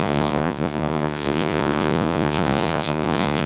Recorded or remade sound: remade